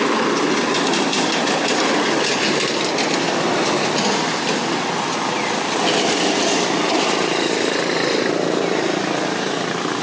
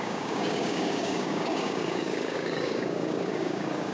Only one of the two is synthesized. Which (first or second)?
second